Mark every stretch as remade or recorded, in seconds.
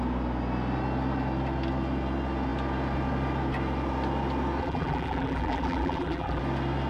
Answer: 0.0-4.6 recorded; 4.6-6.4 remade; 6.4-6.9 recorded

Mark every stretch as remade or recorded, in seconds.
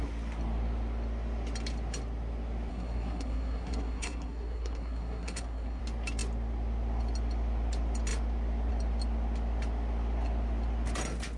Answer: 0.0-2.7 recorded; 2.7-5.8 remade; 5.8-11.4 recorded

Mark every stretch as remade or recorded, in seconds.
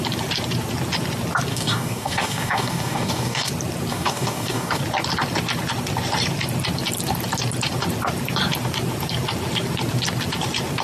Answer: 0.0-1.5 recorded; 1.5-3.5 remade; 3.5-3.9 recorded; 3.9-4.8 remade; 4.8-10.8 recorded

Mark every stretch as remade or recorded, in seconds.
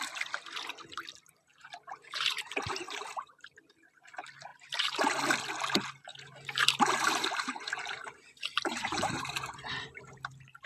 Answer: 0.0-1.5 recorded; 1.5-3.6 remade; 3.6-6.1 recorded; 6.1-10.0 remade; 10.0-10.7 recorded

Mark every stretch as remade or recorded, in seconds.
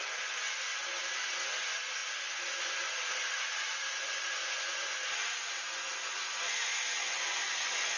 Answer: 0.0-0.7 remade; 0.7-1.3 recorded; 1.3-8.0 remade